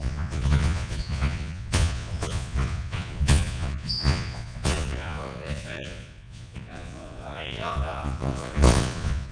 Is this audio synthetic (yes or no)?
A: yes